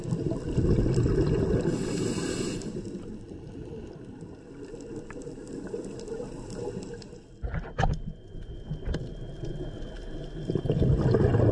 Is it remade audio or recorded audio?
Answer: recorded